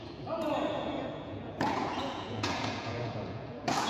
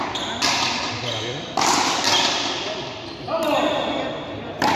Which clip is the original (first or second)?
second